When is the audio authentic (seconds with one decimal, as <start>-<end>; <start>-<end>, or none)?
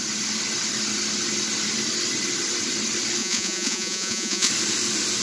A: 0.0-3.2; 4.5-5.2